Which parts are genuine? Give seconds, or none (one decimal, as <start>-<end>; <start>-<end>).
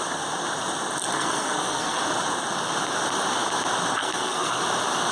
0.0-1.1; 2.0-4.0; 4.6-5.1